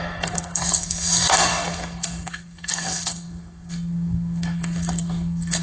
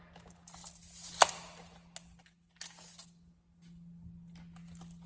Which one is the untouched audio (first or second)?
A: second